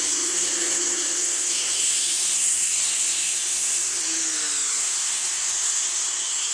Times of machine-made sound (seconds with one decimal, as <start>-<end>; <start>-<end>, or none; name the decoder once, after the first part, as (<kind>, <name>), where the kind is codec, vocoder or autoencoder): 0.0-4.0 (codec, SNAC); 4.8-6.5